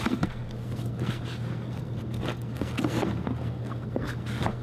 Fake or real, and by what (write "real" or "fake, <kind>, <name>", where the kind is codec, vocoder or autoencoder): fake, codec, SNAC